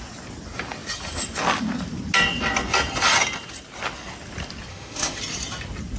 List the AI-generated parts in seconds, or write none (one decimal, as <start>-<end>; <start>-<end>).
4.7-5.2